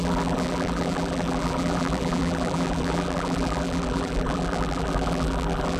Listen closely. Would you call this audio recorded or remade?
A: remade